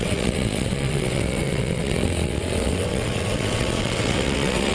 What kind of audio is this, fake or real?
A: fake